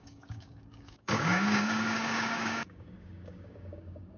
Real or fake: fake